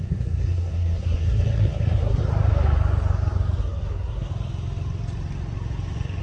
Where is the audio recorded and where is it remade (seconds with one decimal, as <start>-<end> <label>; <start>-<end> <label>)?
0.0-2.2 remade; 2.2-3.6 recorded; 3.6-4.3 remade; 4.3-6.2 recorded